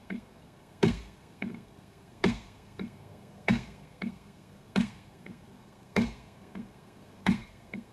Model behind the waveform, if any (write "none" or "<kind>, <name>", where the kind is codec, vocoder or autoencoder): codec, SNAC